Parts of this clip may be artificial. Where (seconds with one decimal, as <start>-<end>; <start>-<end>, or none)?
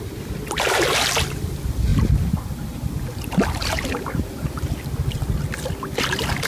none